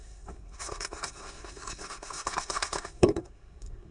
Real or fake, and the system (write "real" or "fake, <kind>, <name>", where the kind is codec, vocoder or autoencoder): fake, codec, SNAC